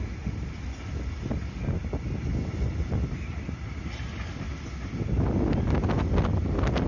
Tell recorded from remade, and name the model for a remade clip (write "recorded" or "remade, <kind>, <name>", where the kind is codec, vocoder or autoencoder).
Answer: recorded